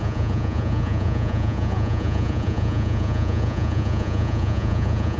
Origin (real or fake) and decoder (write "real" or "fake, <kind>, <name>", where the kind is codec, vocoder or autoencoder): fake, vocoder, Vocos